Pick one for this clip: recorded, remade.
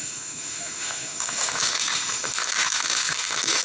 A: remade